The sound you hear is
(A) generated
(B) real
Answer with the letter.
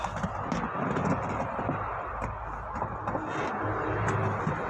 B